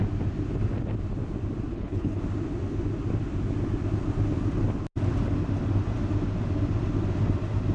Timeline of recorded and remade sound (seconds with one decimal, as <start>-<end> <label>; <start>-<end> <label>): 0.0-1.7 recorded; 1.7-2.2 remade; 2.2-7.7 recorded